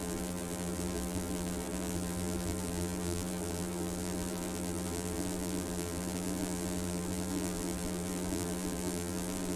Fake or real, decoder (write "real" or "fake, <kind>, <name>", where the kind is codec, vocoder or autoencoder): fake, vocoder, BigVGAN v2